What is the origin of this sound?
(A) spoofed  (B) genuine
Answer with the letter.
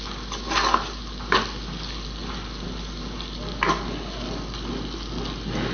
B